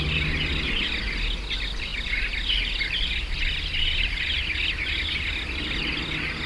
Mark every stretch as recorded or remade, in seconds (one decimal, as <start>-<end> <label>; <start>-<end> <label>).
0.0-6.5 recorded